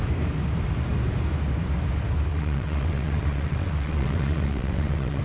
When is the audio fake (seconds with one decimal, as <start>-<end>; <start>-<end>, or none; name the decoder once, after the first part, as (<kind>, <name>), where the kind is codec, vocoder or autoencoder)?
2.3-5.2 (vocoder, WaveNeXt)